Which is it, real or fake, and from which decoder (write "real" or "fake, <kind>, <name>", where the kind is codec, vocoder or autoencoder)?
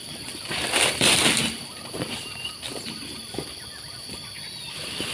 fake, vocoder, BigVGAN v2